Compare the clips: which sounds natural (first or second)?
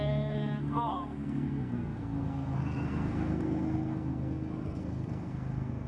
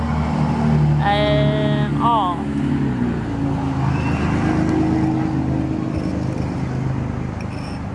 second